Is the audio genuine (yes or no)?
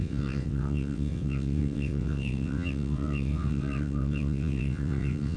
no